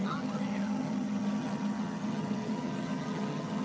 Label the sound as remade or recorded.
remade